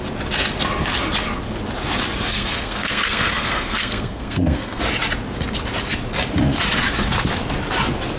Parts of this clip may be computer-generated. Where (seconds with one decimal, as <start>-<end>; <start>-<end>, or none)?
2.3-4.8